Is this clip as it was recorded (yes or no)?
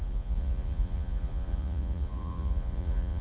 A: no